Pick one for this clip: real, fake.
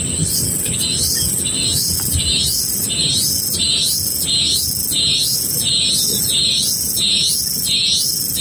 real